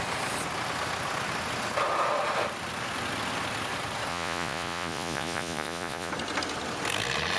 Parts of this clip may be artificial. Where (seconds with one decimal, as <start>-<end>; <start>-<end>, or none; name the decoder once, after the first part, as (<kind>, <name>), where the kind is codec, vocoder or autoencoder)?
4.1-6.1 (vocoder, Vocos)